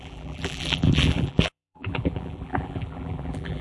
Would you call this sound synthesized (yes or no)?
yes